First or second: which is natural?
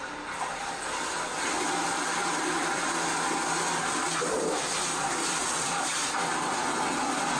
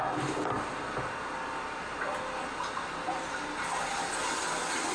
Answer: second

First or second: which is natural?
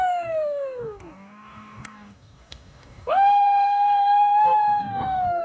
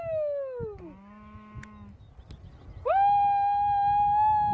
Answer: second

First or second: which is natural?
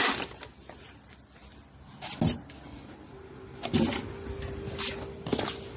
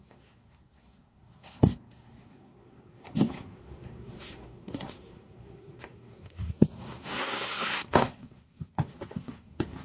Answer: first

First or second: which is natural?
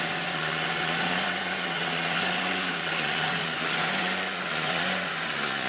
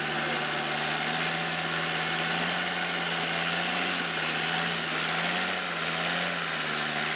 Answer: second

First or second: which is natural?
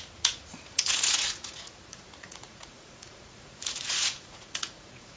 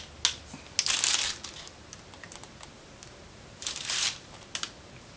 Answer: second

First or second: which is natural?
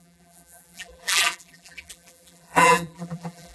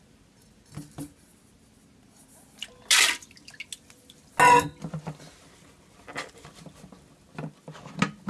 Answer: second